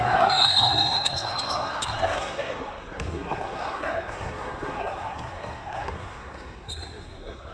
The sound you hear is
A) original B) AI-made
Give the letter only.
B